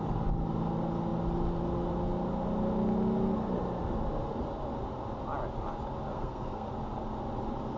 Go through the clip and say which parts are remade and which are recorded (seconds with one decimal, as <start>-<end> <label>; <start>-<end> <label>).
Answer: 0.0-6.1 recorded; 6.1-6.7 remade; 6.7-7.8 recorded